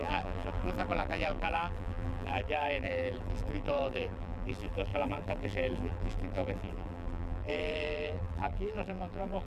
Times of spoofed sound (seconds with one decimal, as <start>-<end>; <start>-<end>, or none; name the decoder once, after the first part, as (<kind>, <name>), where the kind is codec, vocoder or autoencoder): 0.0-9.5 (vocoder, BigVGAN v2)